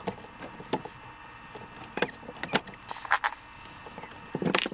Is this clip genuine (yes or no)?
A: yes